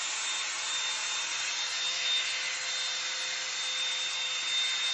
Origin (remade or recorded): recorded